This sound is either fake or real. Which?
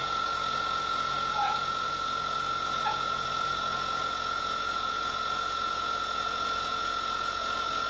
fake